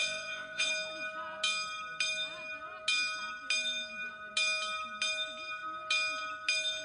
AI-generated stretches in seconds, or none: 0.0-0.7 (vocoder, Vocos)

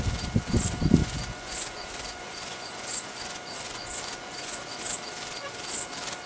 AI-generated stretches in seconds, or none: 1.0-4.8 (vocoder, Vocos)

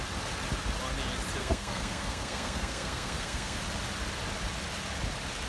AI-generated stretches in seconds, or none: 1.4-3.6 (codec, SNAC)

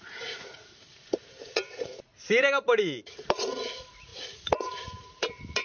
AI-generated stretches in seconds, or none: 0.0-2.1 (vocoder, Vocos); 2.8-5.6

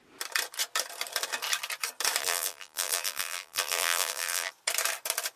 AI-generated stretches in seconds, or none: 2.2-4.5 (vocoder, BigVGAN v2)

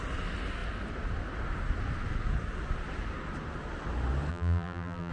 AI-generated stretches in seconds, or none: 4.3-5.1 (vocoder, BigVGAN v2)

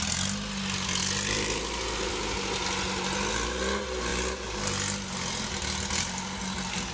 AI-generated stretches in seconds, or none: 1.0-2.1 (vocoder, BigVGAN v2)

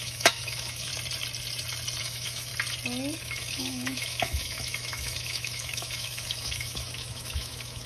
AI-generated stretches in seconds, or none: 0.0-0.9 (autoencoder, DAC-VAE); 2.0-2.5; 3.2-7.9